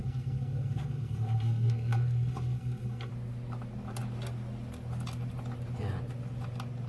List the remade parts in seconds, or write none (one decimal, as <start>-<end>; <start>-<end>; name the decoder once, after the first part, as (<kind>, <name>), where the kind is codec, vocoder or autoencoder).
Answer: 0.0-3.1 (codec, SNAC)